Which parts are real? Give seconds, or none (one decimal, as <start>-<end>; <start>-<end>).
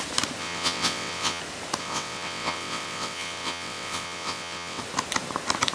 0.0-0.4; 1.4-1.8; 4.8-5.7